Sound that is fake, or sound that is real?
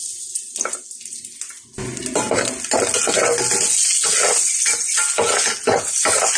real